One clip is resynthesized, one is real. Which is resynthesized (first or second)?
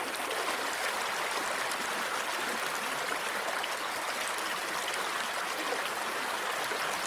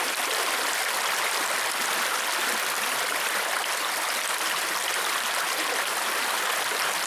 second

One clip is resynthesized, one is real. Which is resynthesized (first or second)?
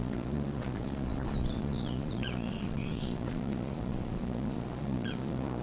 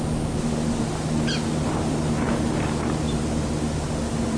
first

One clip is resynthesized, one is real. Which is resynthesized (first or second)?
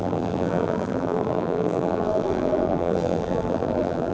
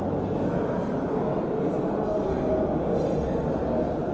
first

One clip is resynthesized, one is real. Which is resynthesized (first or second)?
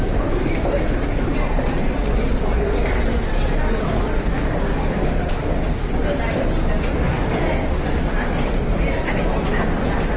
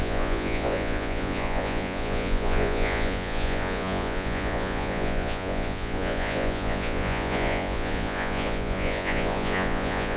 second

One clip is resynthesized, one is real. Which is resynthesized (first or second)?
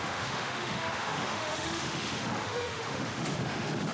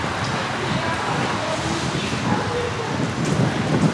first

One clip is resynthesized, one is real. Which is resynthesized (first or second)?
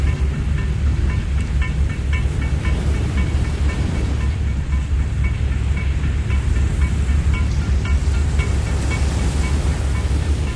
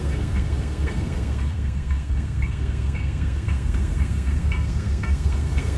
second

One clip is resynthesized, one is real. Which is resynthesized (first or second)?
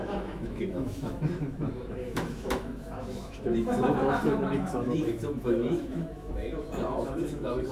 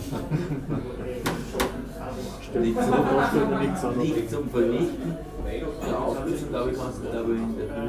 first